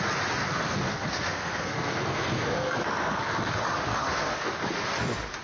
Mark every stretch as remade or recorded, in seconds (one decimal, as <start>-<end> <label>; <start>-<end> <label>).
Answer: 0.0-0.4 recorded; 0.4-3.5 remade; 3.5-3.9 recorded; 3.9-4.5 remade; 4.5-5.4 recorded